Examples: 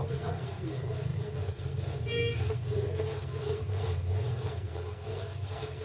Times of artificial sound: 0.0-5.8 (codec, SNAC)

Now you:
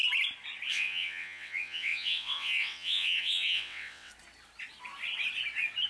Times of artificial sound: 0.7-4.1 (vocoder, WaveNeXt)

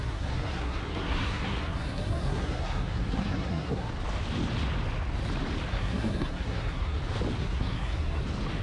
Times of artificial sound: 0.0-3.9 (codec, SNAC); 5.7-7.0; 7.4-8.2

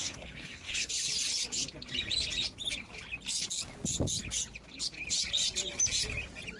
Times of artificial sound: 0.0-0.9 (codec, SNAC)